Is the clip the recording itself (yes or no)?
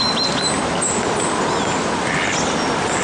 yes